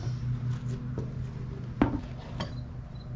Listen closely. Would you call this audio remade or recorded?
recorded